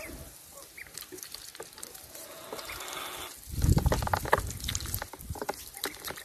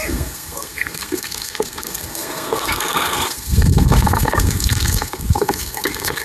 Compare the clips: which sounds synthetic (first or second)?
second